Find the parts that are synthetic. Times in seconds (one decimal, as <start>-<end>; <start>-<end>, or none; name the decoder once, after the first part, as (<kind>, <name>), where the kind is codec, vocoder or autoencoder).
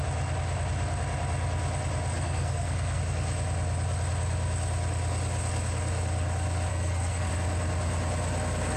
2.1-3.0 (codec, SNAC); 6.7-7.3